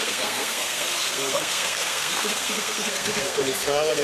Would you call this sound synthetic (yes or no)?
yes